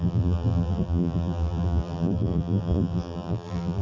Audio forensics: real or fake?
fake